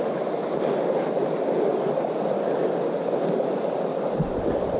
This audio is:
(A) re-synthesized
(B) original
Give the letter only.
B